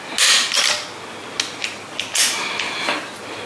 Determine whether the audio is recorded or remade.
recorded